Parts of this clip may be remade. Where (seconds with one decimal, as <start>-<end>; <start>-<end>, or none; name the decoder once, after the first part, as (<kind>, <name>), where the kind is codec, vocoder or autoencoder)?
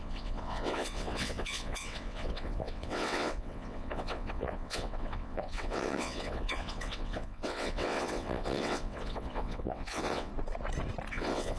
0.0-10.3 (vocoder, WaveNeXt); 11.1-11.6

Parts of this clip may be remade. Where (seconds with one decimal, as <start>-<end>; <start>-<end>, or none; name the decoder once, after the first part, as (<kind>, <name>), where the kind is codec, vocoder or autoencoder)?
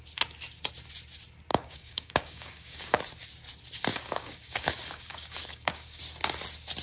1.5-3.0 (codec, DAC); 3.9-6.0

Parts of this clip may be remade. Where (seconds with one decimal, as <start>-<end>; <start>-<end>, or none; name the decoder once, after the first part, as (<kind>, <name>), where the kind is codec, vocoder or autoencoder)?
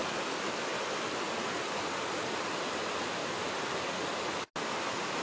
0.0-0.8 (vocoder, BigVGAN v2); 3.2-4.2